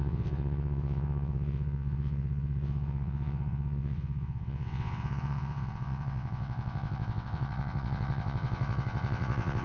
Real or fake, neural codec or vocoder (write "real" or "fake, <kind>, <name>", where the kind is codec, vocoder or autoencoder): fake, vocoder, WaveNeXt